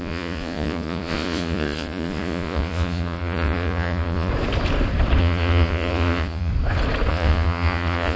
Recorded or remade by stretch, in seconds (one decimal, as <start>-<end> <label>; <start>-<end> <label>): 0.0-4.3 remade; 4.3-5.2 recorded; 5.2-6.5 remade; 6.5-7.1 recorded; 7.1-8.2 remade